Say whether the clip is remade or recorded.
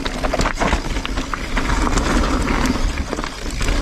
recorded